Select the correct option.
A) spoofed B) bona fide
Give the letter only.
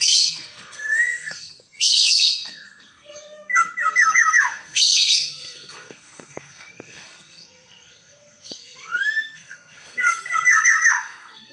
A